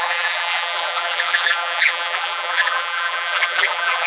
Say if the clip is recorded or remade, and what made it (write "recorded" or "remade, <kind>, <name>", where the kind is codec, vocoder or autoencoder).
remade, vocoder, BigVGAN v2